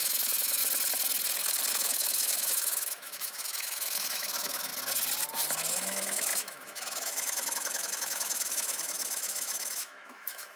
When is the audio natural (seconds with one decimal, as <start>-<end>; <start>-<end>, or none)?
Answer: 0.6-1.7; 4.7-5.7